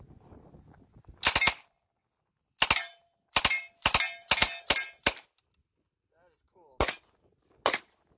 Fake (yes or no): no